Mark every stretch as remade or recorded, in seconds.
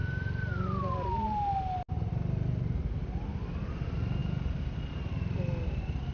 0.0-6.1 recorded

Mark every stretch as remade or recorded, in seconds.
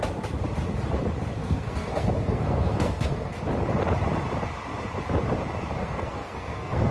0.0-1.4 recorded; 1.4-3.4 remade; 3.4-5.8 recorded; 5.8-6.9 remade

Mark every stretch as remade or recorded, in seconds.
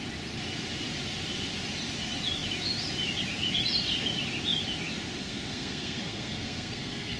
0.0-5.2 recorded; 5.2-7.2 remade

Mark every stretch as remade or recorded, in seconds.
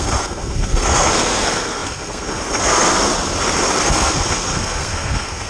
0.0-3.1 remade; 3.1-3.8 recorded; 3.8-5.5 remade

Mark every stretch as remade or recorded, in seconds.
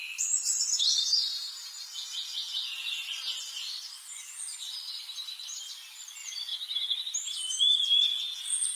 0.0-8.8 recorded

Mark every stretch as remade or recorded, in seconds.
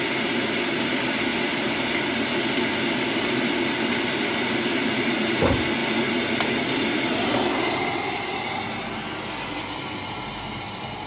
0.0-11.1 recorded